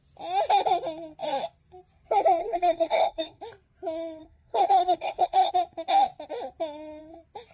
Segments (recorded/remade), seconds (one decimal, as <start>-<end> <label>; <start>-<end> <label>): 0.0-2.4 recorded; 2.4-3.4 remade; 3.4-4.2 recorded; 4.2-5.5 remade; 5.5-7.5 recorded